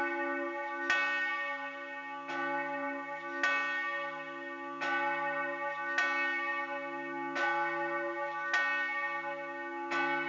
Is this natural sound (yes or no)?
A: yes